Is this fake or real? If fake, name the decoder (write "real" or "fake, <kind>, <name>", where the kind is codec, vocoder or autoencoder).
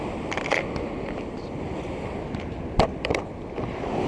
fake, vocoder, BigVGAN v2